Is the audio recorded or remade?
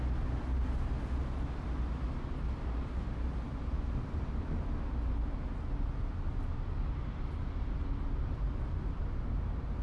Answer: recorded